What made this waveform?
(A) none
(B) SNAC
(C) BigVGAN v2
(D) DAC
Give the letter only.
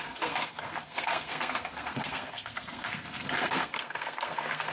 B